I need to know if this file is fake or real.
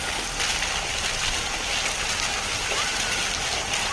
real